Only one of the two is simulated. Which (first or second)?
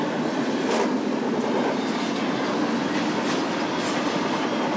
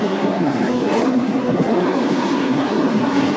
second